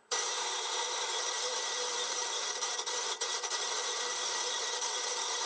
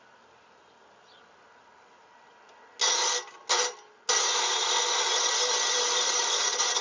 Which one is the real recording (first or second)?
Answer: second